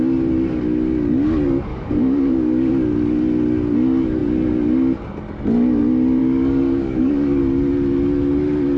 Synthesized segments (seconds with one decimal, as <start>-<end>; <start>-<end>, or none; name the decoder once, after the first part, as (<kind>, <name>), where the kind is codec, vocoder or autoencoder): 1.7-2.7 (codec, DAC); 6.2-7.4